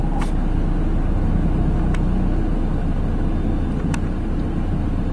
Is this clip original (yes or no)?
yes